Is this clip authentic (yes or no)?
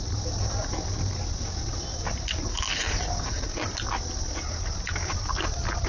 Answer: yes